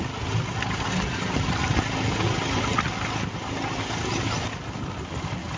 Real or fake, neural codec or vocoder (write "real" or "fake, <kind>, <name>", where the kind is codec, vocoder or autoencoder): real